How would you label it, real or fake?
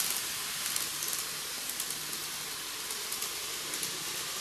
real